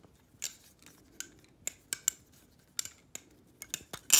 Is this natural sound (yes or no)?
yes